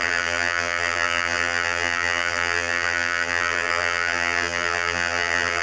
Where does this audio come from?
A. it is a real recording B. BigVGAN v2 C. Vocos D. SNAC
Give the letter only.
B